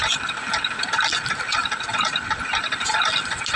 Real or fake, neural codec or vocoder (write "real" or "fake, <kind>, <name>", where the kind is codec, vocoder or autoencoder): real